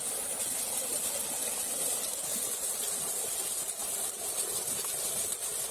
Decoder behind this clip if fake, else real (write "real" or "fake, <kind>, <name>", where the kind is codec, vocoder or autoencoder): real